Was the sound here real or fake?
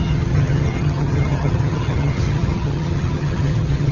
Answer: fake